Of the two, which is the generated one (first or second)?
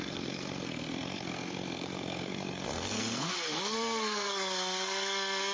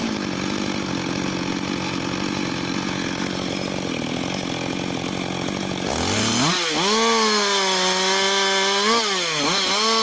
first